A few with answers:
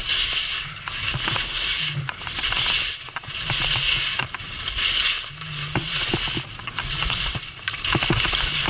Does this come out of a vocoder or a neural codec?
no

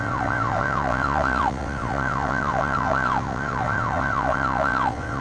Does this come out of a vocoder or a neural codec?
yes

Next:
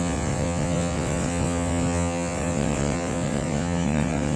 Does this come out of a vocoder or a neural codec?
yes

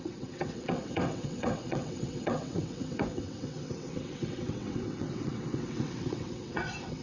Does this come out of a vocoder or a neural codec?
yes